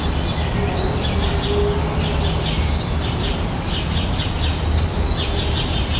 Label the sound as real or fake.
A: real